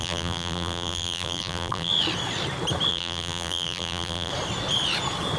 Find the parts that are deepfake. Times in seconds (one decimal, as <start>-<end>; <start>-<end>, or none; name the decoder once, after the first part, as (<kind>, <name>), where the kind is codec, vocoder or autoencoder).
0.0-1.9 (vocoder, BigVGAN v2); 2.9-4.3